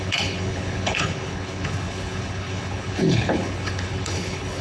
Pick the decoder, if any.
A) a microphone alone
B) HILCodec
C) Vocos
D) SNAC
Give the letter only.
B